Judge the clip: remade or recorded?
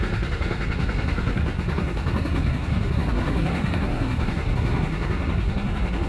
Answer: remade